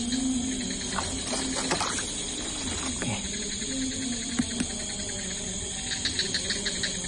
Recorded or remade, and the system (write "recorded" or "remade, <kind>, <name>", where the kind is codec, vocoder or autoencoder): recorded